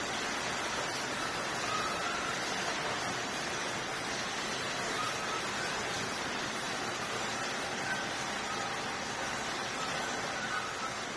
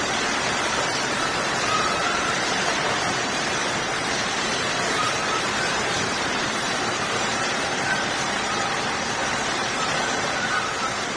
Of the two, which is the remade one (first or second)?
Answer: second